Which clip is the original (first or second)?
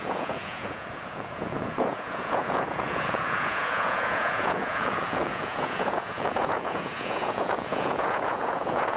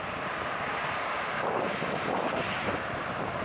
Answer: second